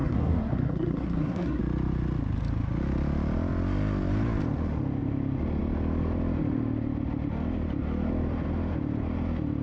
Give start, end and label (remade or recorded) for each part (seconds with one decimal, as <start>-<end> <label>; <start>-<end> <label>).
0.0-1.6 remade; 1.6-9.6 recorded